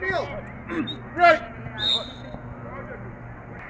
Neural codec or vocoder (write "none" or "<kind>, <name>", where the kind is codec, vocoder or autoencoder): none